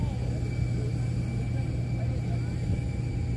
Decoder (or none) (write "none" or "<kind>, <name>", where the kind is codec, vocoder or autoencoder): none